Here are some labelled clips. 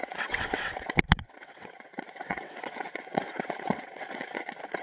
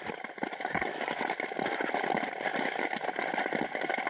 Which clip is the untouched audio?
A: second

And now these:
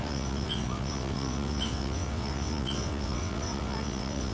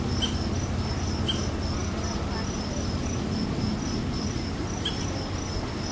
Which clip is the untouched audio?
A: second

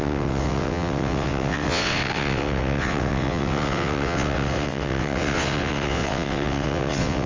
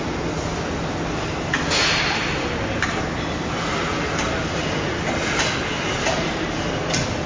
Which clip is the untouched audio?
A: second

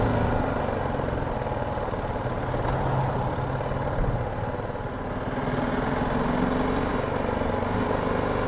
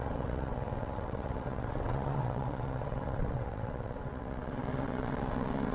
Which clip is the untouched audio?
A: first